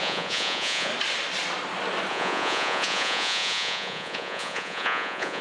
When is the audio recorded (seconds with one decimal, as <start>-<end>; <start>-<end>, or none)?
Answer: 0.9-2.1